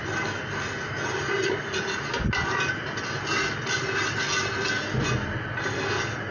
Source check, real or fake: real